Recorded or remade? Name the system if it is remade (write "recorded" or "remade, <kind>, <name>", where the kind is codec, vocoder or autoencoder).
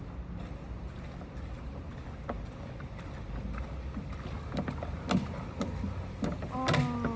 recorded